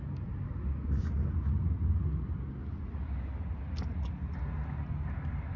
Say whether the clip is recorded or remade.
recorded